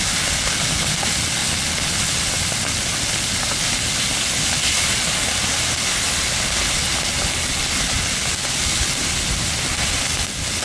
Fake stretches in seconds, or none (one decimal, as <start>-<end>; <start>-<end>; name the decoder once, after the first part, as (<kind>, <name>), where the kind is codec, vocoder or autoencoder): none